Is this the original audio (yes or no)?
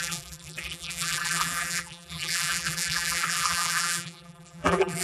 no